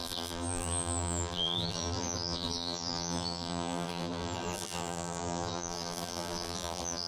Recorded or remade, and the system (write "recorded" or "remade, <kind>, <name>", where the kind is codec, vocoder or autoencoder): remade, vocoder, BigVGAN v2